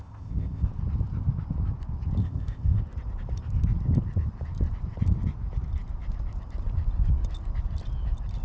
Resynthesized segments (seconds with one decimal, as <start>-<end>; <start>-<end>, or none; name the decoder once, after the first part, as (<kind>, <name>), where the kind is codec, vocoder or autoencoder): 0.0-0.7 (codec, ZipCodec); 2.2-2.8